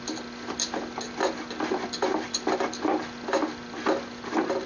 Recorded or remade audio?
recorded